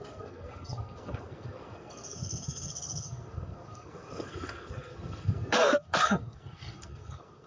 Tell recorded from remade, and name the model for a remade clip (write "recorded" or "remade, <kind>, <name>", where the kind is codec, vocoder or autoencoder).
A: remade, codec, SNAC